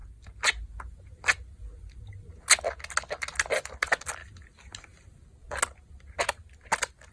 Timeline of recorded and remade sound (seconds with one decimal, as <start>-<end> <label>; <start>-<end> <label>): 0.0-7.1 recorded